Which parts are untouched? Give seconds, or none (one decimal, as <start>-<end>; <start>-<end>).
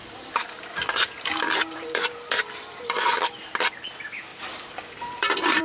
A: 3.3-4.3